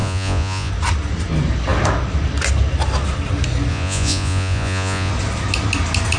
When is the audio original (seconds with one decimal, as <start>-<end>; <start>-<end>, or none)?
0.7-3.7; 5.1-6.2